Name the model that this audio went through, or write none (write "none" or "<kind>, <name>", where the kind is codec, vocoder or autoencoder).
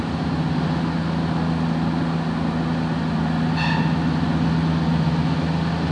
none